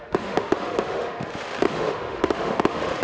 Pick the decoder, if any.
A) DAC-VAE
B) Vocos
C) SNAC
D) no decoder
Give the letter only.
A